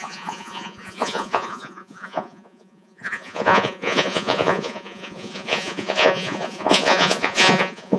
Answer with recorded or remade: remade